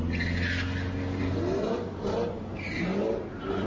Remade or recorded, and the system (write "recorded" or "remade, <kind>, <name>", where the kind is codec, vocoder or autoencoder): recorded